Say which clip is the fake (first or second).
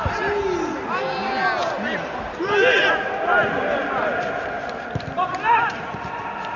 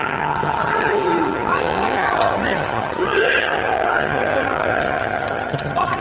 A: second